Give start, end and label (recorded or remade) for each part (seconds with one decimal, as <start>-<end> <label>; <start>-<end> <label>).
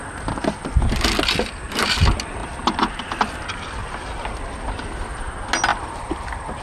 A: 0.0-2.4 recorded; 2.4-3.0 remade; 3.0-3.8 recorded; 3.8-4.4 remade; 4.4-5.7 recorded; 5.7-6.6 remade